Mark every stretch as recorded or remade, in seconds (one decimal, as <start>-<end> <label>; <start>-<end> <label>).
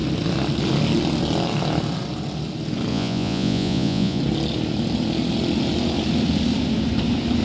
0.0-2.9 recorded; 2.9-4.2 remade; 4.2-7.4 recorded